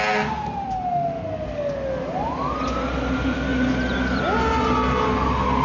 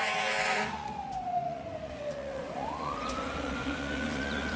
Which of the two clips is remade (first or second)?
second